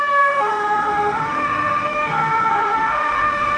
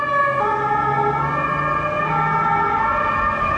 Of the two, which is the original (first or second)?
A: second